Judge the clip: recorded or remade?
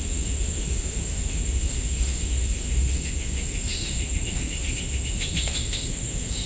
remade